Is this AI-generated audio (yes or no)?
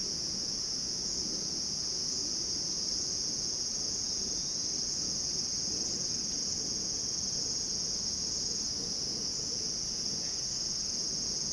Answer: yes